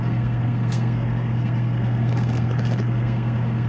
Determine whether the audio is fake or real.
fake